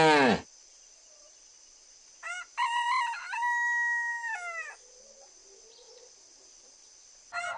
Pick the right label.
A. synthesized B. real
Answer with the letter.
B